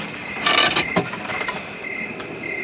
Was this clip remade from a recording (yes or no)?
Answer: no